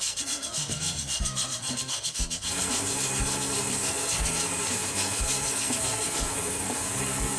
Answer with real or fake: fake